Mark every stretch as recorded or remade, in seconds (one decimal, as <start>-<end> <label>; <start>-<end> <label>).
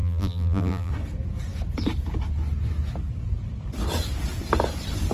0.0-0.9 remade; 0.9-5.1 recorded